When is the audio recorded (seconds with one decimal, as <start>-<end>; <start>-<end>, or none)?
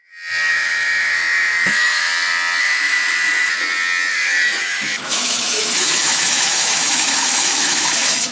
0.0-0.5; 2.1-2.6; 3.0-4.1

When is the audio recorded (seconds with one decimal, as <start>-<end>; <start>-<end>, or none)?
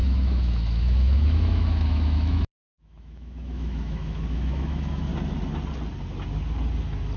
5.1-7.2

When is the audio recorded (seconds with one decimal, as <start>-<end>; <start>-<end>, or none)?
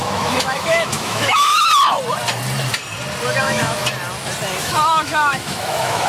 1.7-3.4; 3.8-4.6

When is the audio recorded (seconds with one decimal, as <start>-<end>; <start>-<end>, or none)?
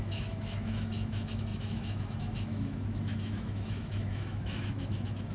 none